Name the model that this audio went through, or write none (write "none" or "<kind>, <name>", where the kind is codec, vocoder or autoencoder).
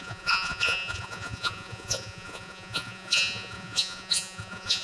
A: vocoder, Vocos